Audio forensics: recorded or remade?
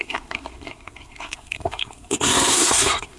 remade